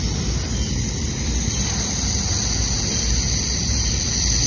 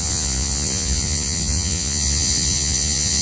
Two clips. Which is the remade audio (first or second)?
second